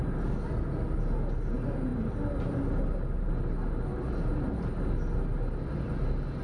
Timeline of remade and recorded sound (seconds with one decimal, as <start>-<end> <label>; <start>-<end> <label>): 0.0-6.4 recorded